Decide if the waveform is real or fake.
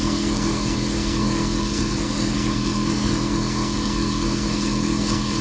fake